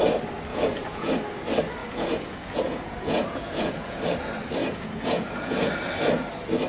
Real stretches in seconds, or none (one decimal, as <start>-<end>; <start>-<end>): 0.0-0.5; 1.1-1.8; 4.0-4.6; 5.7-6.7

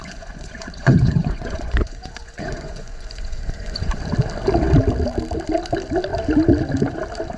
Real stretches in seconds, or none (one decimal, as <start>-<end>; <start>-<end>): 4.0-7.4